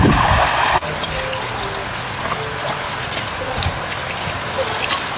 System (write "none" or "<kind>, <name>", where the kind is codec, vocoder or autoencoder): none